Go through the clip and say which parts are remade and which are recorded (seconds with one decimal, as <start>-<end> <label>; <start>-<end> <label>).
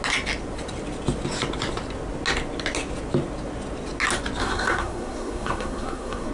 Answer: 0.0-4.4 recorded; 4.4-6.3 remade